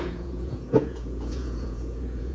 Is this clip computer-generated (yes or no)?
yes